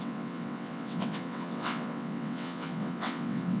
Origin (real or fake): fake